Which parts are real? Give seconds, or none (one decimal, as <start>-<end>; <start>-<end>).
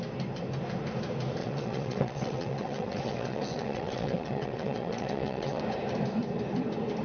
0.0-1.4; 5.6-7.0